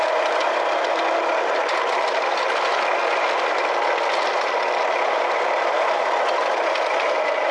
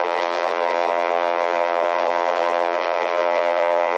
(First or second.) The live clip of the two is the first